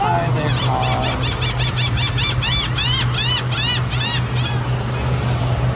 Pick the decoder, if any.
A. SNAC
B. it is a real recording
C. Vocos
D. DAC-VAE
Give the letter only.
B